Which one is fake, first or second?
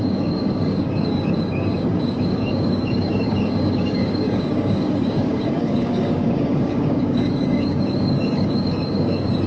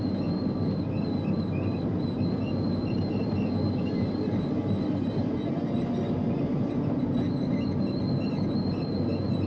first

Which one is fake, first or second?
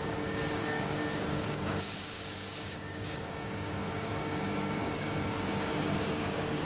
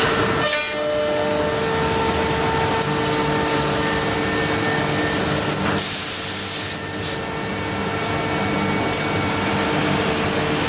first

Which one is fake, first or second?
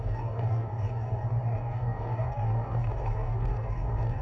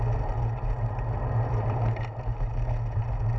first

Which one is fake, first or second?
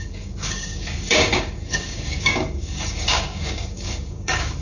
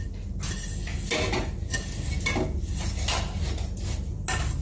first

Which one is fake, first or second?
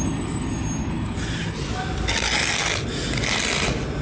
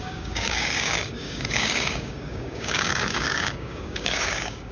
second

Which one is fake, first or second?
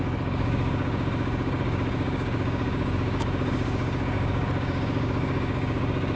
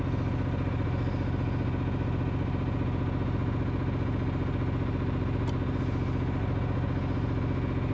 first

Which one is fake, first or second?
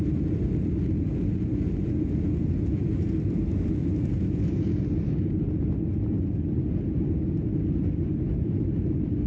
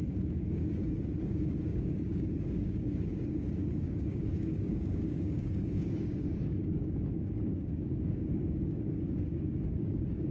second